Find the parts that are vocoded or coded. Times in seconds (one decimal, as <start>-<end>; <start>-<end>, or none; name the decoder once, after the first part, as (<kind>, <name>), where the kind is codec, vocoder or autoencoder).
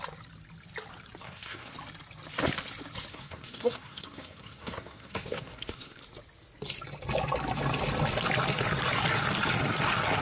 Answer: 1.2-1.7 (codec, SNAC); 3.1-6.0